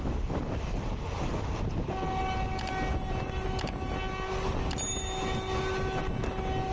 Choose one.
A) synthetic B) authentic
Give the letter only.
B